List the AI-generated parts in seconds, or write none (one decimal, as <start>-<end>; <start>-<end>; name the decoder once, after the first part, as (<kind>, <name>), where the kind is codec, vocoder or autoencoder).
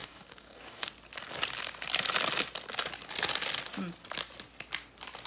0.0-0.9 (codec, DAC)